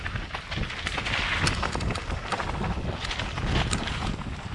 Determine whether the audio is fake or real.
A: real